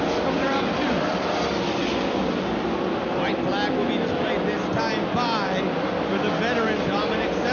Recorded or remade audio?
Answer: recorded